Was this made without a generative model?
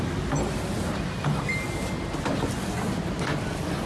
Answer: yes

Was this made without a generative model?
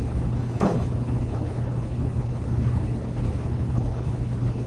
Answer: no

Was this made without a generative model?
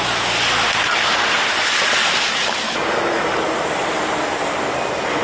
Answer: yes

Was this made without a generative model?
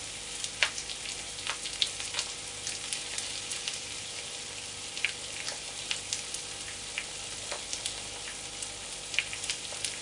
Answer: yes